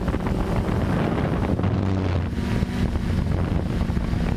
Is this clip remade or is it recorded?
recorded